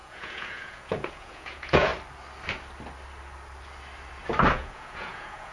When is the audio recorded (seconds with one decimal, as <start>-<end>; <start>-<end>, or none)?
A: 1.9-4.5